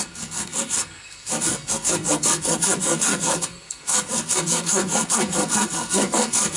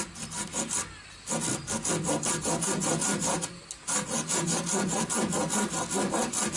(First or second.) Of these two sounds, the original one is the second